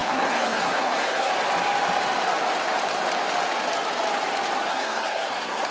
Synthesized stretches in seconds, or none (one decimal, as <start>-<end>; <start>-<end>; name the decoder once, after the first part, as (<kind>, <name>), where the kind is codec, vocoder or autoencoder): 0.0-1.3 (codec, SNAC); 4.7-5.7